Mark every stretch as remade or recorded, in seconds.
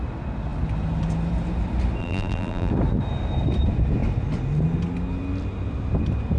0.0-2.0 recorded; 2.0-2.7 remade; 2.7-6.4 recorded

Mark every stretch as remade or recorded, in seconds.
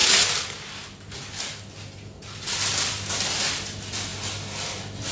0.0-5.1 recorded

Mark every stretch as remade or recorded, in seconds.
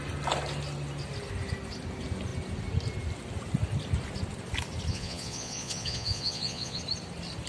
0.0-4.9 recorded; 4.9-6.8 remade; 6.8-7.5 recorded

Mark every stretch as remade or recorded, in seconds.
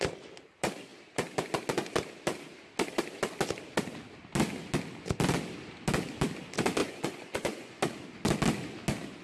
0.0-6.8 recorded; 6.8-7.8 remade; 7.8-9.2 recorded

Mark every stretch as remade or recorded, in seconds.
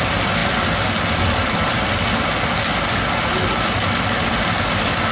0.0-5.1 recorded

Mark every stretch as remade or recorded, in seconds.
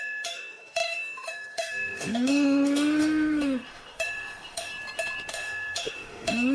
0.0-4.7 remade; 4.7-5.3 recorded; 5.3-6.5 remade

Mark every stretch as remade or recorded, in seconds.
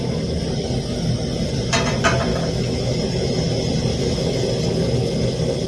0.0-2.3 recorded; 2.3-3.0 remade; 3.0-3.9 recorded; 3.9-4.4 remade; 4.4-5.7 recorded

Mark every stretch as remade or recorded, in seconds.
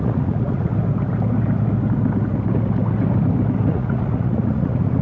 0.0-0.7 remade; 0.7-3.7 recorded; 3.7-5.0 remade